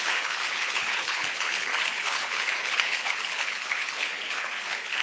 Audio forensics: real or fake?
fake